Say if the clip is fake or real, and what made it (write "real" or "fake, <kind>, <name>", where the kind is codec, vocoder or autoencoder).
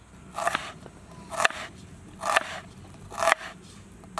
real